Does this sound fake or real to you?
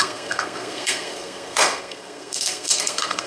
fake